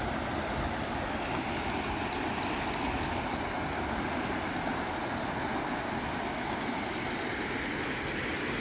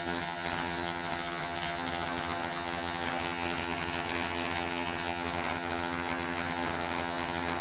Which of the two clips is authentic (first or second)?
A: first